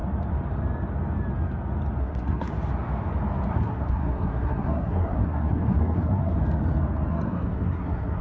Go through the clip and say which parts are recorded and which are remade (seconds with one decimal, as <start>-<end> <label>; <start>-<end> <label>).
0.0-2.0 recorded; 2.0-2.5 remade; 2.5-3.5 recorded; 3.5-6.4 remade; 6.4-7.1 recorded; 7.1-8.2 remade